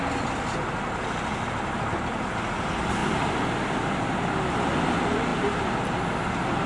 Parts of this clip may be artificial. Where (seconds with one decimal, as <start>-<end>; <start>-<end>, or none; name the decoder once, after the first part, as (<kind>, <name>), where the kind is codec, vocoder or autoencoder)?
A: none